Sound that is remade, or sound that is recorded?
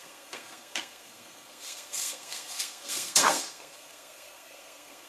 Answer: remade